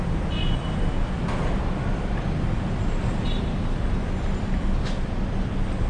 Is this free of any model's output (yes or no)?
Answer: no